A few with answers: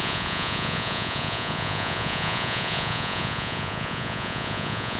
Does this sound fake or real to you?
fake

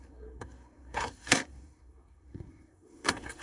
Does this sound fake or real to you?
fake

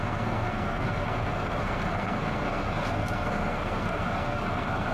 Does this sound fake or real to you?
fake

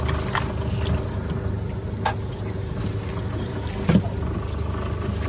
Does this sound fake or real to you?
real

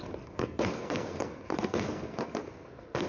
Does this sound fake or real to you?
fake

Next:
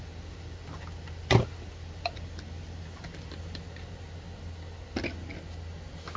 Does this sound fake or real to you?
real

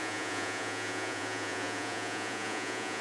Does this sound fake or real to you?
fake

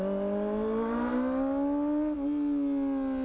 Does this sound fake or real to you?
real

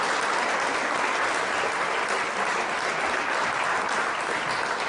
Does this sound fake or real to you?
real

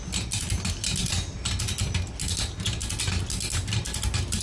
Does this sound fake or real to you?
real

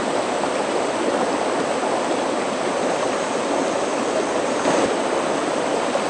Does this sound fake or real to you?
real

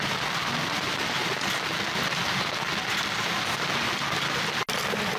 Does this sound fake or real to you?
real